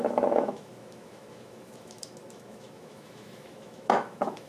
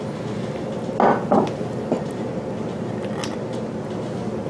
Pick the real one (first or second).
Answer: second